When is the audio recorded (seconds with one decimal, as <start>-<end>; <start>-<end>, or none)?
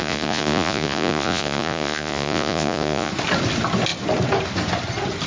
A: 3.1-5.3